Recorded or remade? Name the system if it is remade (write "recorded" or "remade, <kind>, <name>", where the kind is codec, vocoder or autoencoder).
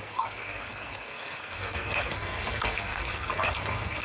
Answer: remade, codec, SNAC